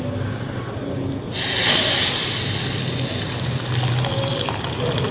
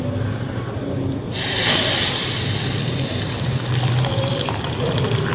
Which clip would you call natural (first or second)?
first